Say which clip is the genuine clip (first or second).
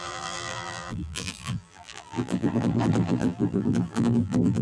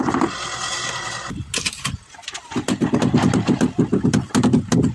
second